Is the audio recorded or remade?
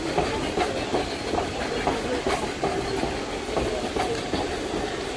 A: recorded